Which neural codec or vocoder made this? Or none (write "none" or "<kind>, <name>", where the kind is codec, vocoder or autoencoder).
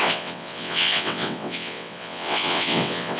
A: vocoder, WaveNeXt